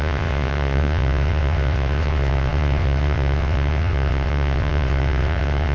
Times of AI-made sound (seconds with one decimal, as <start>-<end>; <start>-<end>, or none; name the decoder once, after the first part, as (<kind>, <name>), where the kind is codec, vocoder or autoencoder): 0.0-5.7 (vocoder, WaveNeXt)